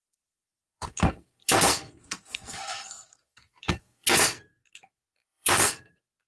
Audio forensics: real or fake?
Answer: fake